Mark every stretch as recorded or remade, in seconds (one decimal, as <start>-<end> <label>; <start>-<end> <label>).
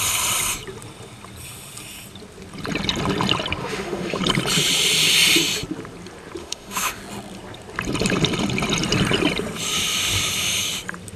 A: 0.0-3.6 recorded; 3.6-4.2 remade; 4.2-6.4 recorded; 6.4-7.0 remade; 7.0-11.2 recorded